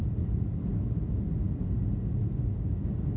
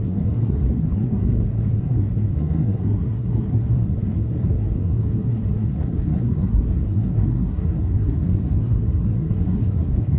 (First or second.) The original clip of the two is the first